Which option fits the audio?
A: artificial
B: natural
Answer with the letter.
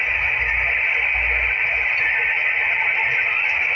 B